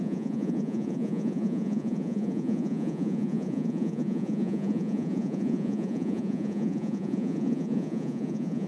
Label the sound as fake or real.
fake